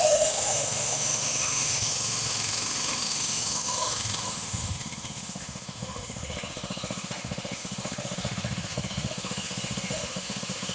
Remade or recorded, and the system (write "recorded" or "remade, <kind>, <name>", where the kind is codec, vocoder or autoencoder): remade, autoencoder, DAC-VAE